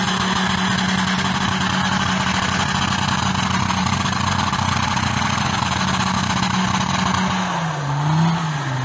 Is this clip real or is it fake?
real